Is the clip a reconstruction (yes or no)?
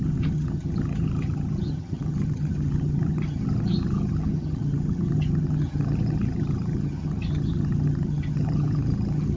yes